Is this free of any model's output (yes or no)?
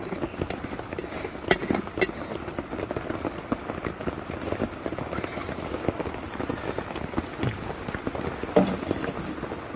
yes